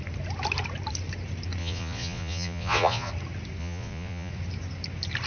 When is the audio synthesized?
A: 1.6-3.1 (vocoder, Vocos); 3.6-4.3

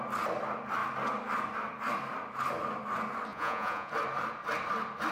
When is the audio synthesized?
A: 3.3-3.9 (vocoder, Vocos)

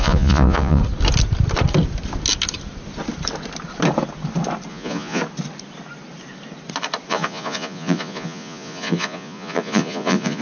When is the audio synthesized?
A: 0.0-0.8 (vocoder, Vocos); 4.7-5.2; 7.1-10.4

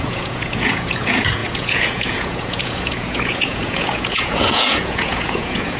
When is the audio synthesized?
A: 0.0-5.8 (vocoder, Vocos)

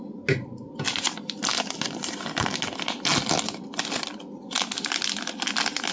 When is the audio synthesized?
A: none